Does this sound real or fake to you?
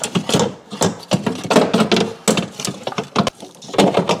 real